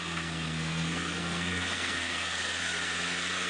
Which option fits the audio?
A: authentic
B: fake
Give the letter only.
B